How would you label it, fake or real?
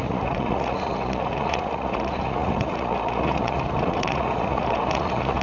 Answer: fake